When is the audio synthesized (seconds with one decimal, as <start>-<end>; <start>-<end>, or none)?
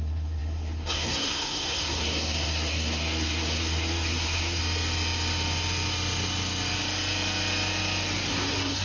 0.0-4.6; 8.3-8.8